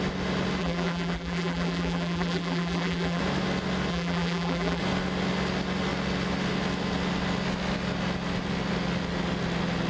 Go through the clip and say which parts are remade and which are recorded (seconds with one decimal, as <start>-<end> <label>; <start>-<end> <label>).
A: 0.0-0.6 recorded; 0.6-3.2 remade; 3.2-3.9 recorded; 3.9-4.8 remade; 4.8-9.9 recorded